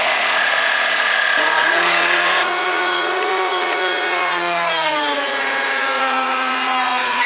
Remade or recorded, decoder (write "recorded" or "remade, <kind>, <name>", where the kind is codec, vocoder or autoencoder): remade, vocoder, Vocos